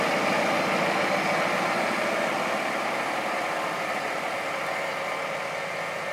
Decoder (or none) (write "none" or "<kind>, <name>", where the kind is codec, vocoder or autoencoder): none